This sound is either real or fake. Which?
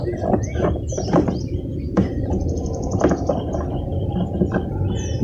fake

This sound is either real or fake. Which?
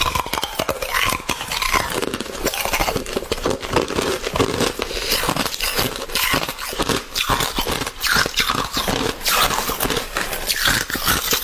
fake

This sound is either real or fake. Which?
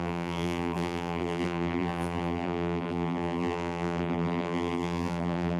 fake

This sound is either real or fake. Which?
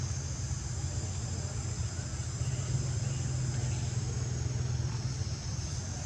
real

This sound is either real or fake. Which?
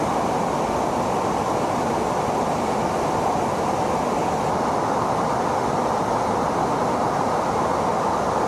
real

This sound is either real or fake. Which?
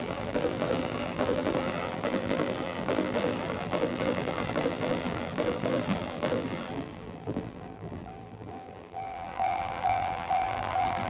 fake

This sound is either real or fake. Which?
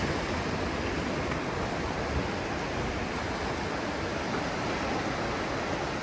real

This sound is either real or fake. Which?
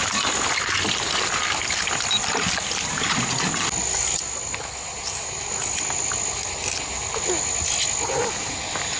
real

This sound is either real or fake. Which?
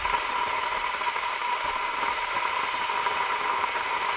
fake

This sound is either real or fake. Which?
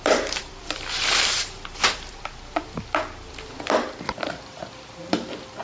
fake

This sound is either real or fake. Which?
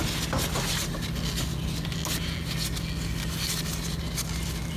real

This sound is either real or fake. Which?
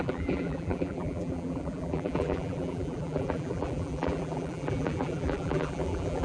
fake